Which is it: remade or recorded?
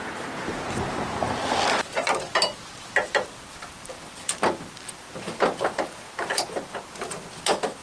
recorded